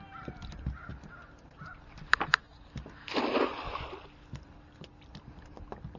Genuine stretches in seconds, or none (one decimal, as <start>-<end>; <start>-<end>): 0.0-6.0